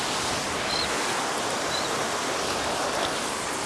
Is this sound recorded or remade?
recorded